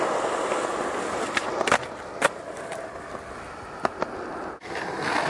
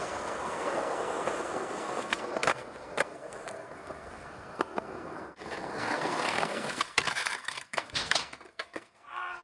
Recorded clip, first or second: first